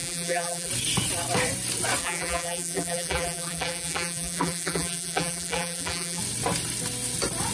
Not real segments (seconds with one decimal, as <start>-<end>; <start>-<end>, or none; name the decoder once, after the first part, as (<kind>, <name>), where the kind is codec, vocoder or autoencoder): 0.0-0.7 (vocoder, BigVGAN v2); 2.0-6.2